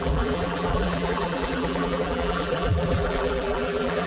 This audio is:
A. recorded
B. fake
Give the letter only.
B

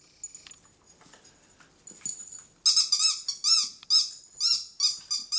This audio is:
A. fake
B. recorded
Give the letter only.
B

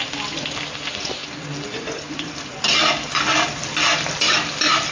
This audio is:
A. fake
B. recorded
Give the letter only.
B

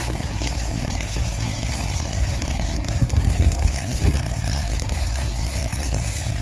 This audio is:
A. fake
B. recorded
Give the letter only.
A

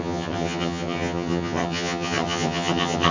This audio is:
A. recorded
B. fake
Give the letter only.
B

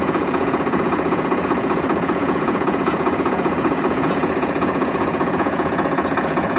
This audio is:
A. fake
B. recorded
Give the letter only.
A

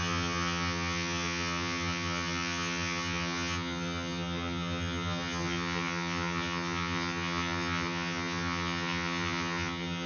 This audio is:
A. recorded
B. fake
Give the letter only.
B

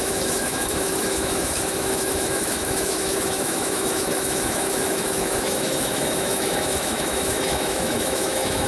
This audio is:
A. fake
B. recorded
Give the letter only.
A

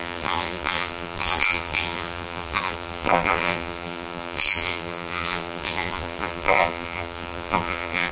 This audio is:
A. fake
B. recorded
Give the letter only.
A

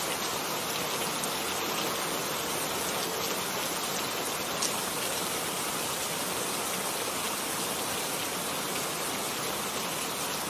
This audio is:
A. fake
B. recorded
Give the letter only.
B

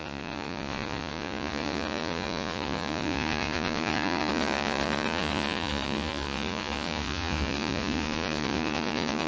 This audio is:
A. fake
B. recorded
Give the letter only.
A